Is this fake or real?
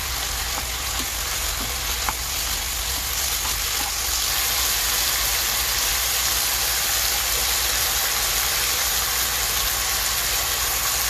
real